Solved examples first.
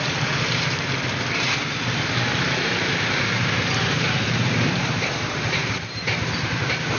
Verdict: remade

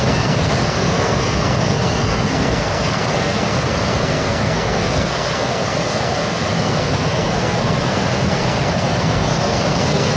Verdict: remade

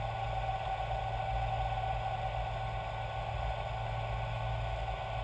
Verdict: recorded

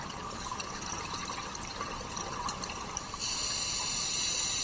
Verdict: recorded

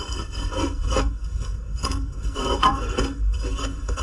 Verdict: remade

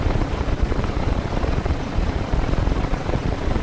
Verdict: remade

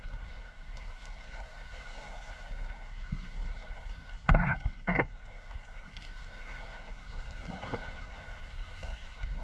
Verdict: remade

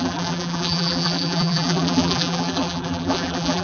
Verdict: remade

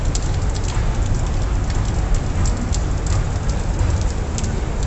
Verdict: recorded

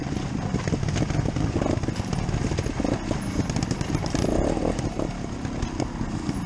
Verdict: recorded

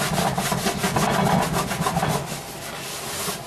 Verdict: recorded